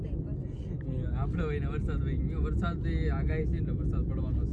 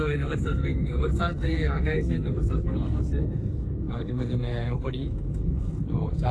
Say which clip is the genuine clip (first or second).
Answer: first